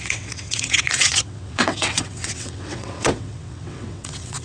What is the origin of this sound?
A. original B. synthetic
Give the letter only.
B